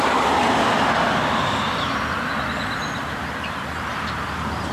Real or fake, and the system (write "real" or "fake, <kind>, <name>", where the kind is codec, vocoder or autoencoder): real